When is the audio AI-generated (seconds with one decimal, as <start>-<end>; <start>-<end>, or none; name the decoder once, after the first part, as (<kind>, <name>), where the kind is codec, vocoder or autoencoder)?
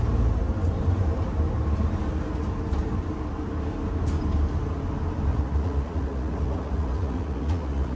5.3-8.0 (vocoder, Vocos)